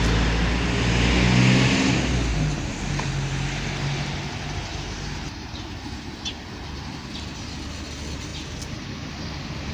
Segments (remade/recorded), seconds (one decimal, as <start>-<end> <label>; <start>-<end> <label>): 0.0-2.3 recorded; 2.3-2.8 remade; 2.8-4.7 recorded; 4.7-6.4 remade; 6.4-8.3 recorded; 8.3-9.1 remade; 9.1-9.7 recorded